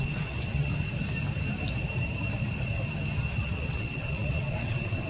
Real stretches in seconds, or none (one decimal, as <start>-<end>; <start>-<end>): 0.7-3.4

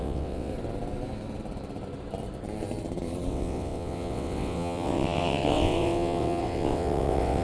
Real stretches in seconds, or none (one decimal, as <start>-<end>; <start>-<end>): 0.5-3.3

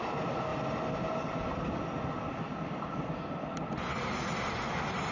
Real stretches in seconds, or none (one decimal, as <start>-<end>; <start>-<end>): 0.0-5.1

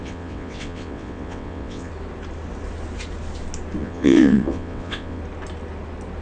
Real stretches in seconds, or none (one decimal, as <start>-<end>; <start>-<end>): 1.9-3.8; 5.2-6.2

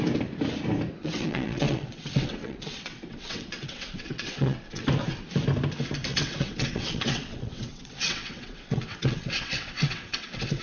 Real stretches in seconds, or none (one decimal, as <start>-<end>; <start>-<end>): 0.0-1.0; 4.9-6.1

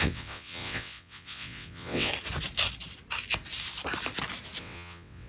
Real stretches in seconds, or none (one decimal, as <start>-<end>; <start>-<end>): 2.1-4.6

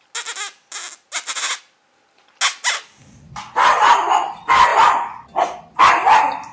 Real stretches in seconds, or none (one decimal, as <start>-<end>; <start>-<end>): 0.0-6.5

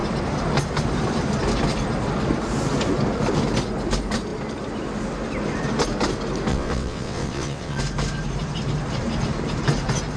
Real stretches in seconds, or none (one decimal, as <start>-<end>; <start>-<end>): 0.0-6.5; 7.8-10.2